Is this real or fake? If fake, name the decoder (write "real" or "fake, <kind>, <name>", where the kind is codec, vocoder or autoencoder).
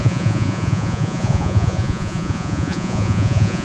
fake, vocoder, Vocos